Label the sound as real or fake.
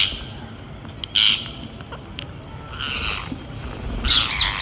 real